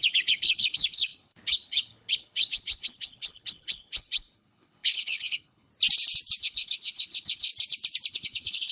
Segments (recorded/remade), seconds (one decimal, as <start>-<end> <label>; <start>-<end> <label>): 0.0-5.7 remade; 5.7-6.4 recorded; 6.4-7.5 remade; 7.5-8.1 recorded; 8.1-8.7 remade